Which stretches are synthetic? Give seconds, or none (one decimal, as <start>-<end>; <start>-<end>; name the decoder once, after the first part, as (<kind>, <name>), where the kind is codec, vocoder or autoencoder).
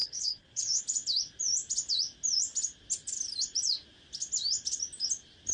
0.0-0.8 (codec, HILCodec)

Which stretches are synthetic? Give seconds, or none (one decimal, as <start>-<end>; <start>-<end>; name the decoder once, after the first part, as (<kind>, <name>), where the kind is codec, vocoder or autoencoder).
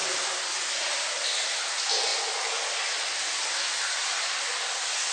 none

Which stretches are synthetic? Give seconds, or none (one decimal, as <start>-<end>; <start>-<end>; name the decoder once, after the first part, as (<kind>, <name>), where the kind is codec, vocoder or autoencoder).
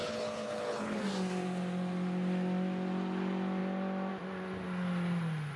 0.0-1.0 (codec, HILCodec)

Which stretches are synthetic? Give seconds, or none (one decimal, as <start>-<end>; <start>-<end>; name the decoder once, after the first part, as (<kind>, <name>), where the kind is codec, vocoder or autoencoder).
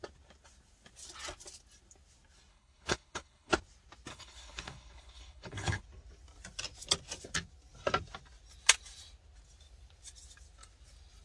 2.5-3.5 (codec, HILCodec); 4.1-5.8